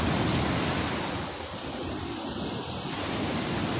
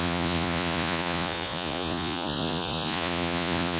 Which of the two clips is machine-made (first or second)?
second